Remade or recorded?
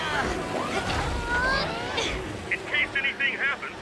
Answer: recorded